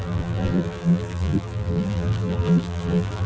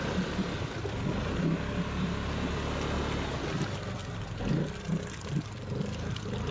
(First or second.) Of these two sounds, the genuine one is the second